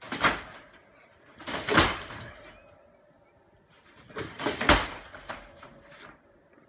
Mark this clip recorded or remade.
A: recorded